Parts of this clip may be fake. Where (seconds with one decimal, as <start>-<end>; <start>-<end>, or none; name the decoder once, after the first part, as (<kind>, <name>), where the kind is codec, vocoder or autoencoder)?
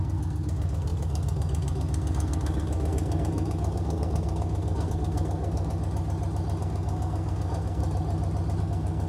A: 0.0-5.7 (codec, SNAC); 6.6-7.8; 8.6-9.1